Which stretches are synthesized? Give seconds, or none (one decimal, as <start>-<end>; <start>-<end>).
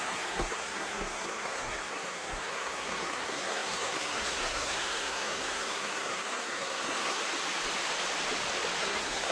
0.0-7.2; 8.8-9.3